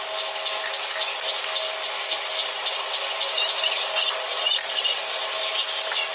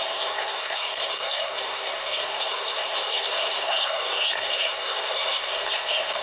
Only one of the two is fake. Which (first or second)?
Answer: second